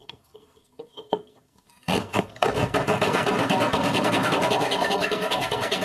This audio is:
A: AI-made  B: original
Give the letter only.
A